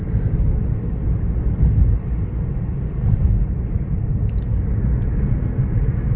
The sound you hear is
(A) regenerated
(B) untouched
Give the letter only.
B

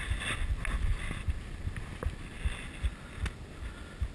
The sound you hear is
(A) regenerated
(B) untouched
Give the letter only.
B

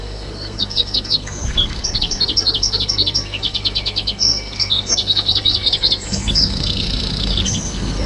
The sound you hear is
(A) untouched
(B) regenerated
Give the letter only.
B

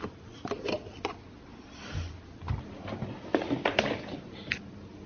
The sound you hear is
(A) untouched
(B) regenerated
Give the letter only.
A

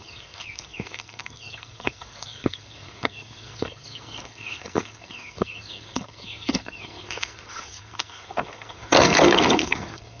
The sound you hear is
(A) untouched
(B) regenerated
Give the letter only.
B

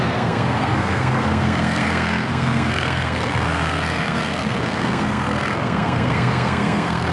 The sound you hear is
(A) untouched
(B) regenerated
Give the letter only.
B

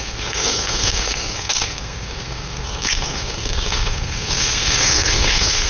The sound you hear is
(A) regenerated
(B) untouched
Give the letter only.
A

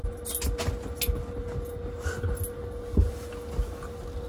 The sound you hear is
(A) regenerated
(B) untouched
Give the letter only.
B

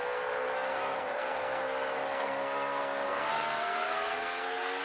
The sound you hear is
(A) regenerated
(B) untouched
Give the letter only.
A